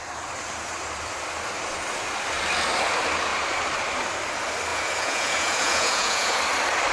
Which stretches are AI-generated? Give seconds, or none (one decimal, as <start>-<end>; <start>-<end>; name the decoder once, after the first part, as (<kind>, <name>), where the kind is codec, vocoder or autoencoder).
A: 4.7-6.4 (vocoder, Vocos)